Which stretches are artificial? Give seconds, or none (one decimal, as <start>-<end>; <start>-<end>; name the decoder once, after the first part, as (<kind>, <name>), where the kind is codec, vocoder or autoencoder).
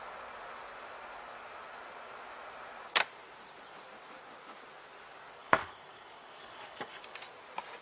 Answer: 5.4-7.0 (codec, DAC)